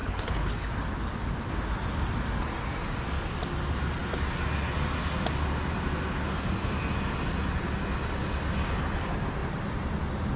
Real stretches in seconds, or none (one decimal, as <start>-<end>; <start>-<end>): 0.7-10.4